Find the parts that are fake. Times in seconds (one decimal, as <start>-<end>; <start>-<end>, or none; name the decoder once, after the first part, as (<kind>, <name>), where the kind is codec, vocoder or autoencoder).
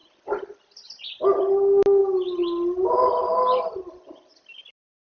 none